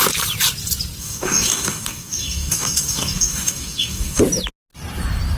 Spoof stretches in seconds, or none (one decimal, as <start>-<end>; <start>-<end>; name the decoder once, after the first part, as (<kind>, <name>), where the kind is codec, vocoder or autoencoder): 1.0-4.2 (codec, DAC)